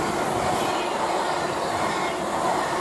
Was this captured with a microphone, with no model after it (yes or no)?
yes